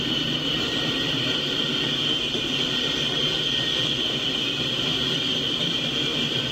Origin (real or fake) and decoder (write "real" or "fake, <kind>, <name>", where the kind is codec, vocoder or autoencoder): real